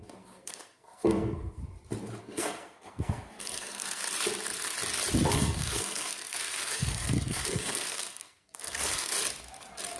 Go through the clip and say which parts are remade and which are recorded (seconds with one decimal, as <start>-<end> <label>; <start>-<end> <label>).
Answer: 0.0-1.6 remade; 1.6-2.2 recorded; 2.2-4.0 remade; 4.0-5.3 recorded; 5.3-9.1 remade; 9.1-10.0 recorded